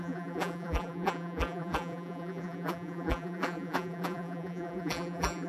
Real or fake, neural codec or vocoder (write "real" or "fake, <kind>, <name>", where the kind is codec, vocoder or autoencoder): fake, vocoder, BigVGAN v2